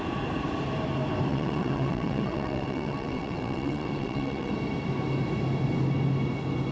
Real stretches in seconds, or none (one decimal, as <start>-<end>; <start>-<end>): 0.0-1.3; 4.5-6.7